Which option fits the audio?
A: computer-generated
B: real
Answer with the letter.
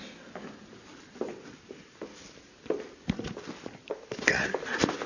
B